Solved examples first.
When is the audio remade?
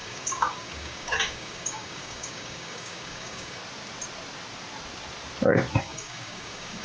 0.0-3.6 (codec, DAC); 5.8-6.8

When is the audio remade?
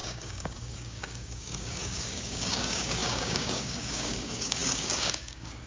0.0-5.7 (codec, DAC)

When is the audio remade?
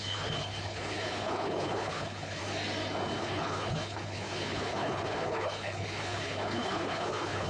0.0-2.4 (codec, HILCodec); 3.2-7.5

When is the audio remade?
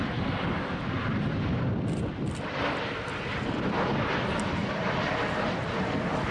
0.0-4.6 (vocoder, BigVGAN v2); 5.3-6.3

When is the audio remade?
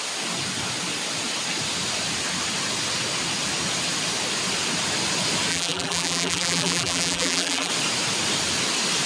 5.5-7.7 (vocoder, BigVGAN v2)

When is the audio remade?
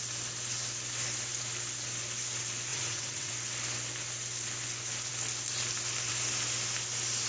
2.7-3.3 (vocoder, WaveNeXt)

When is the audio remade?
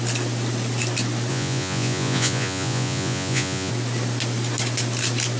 1.3-3.7 (vocoder, Vocos)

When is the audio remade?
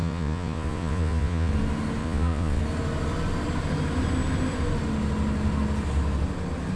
0.0-1.5 (vocoder, Vocos); 2.0-2.6